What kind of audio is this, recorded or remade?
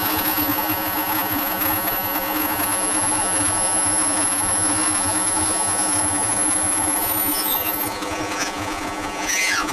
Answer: remade